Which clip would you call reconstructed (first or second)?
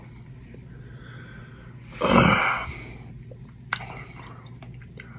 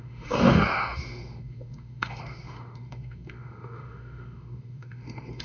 second